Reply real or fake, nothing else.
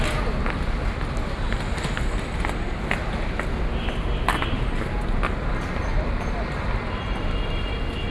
real